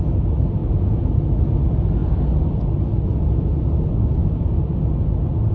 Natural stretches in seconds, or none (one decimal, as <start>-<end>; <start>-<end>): 0.0-0.6; 1.1-5.5